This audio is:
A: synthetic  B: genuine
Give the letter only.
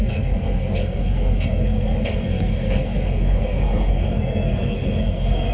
A